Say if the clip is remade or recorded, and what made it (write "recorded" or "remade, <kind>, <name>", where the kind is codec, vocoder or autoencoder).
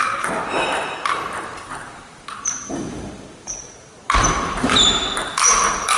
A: remade, vocoder, BigVGAN v2